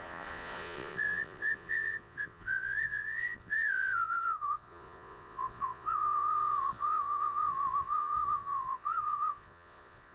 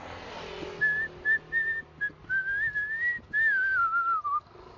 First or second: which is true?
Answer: second